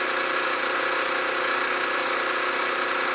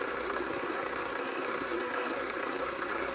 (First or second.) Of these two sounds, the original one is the first